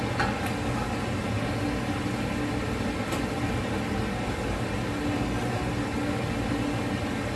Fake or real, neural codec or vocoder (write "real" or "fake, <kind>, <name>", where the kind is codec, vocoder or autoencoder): real